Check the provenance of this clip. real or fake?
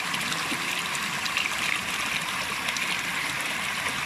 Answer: real